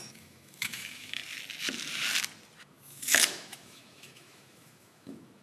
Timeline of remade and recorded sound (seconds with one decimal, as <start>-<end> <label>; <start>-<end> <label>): 0.0-1.2 remade; 1.2-2.6 recorded; 2.6-5.4 remade

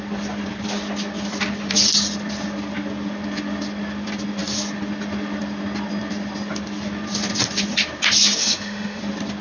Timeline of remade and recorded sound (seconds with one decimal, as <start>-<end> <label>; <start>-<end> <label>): 0.0-8.4 recorded; 8.4-9.0 remade; 9.0-9.4 recorded